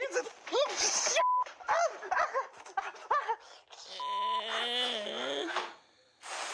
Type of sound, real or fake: real